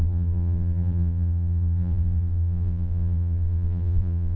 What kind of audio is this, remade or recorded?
remade